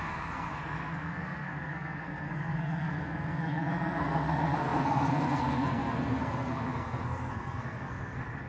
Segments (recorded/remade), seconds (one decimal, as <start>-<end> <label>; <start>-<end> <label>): 0.0-8.5 remade